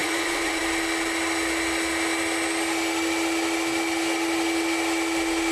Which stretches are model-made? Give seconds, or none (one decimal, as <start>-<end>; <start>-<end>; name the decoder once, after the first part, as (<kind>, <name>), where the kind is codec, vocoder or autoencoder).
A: 0.0-0.6 (vocoder, Vocos)